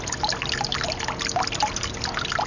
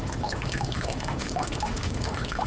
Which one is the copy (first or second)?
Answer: second